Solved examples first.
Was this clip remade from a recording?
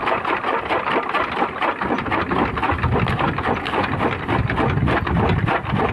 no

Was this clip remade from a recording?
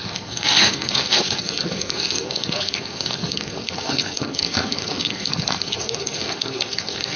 yes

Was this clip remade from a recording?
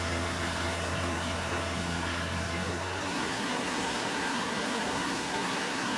yes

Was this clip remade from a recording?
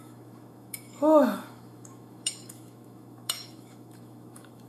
yes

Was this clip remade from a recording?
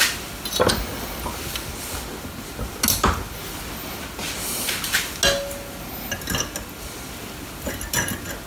no